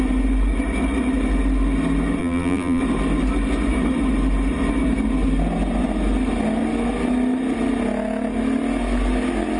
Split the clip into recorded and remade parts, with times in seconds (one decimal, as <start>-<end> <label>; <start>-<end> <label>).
0.0-2.2 recorded; 2.2-2.8 remade; 2.8-9.6 recorded